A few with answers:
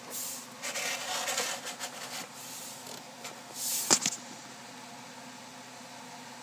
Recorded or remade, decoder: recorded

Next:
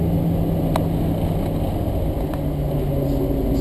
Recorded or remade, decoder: recorded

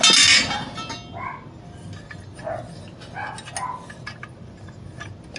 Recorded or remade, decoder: recorded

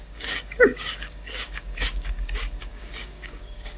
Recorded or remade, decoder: remade, codec, DAC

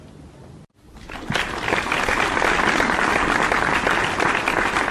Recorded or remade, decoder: recorded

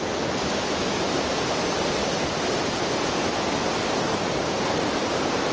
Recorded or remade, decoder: recorded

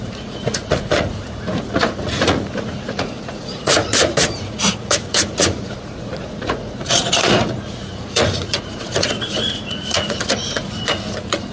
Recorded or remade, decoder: remade, vocoder, Vocos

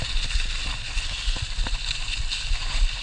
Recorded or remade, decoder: recorded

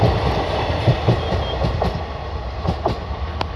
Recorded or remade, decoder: recorded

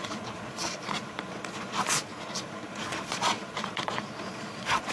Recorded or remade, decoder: remade, vocoder, Vocos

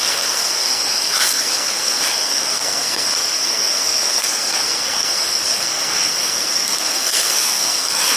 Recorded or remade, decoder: remade, codec, SNAC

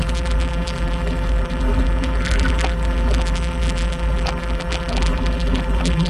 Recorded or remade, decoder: remade, vocoder, BigVGAN v2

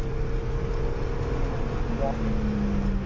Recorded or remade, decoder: recorded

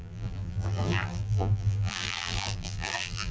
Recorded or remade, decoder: remade, vocoder, BigVGAN v2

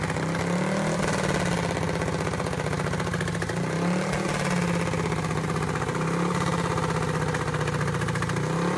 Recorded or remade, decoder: recorded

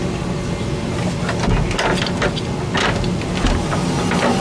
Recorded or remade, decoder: recorded